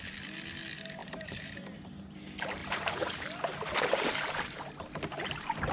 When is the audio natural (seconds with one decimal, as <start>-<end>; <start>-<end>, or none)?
0.0-1.0; 2.1-2.6; 4.7-5.7